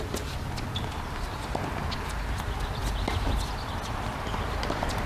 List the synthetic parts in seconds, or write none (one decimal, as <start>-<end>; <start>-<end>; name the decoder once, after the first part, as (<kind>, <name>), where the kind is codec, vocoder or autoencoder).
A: none